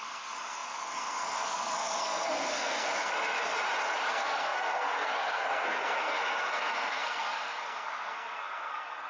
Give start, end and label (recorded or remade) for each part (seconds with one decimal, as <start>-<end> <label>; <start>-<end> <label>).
0.0-3.5 remade; 3.5-4.1 recorded; 4.1-9.1 remade